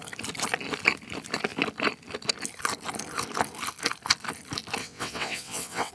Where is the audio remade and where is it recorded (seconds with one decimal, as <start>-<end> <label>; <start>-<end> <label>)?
0.0-4.8 recorded; 4.8-5.9 remade